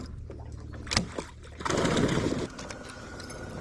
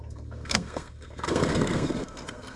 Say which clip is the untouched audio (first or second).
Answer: first